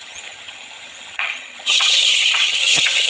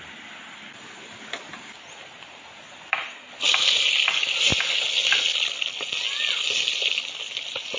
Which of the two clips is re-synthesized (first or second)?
first